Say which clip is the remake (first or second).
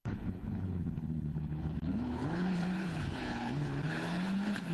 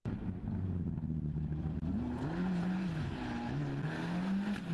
first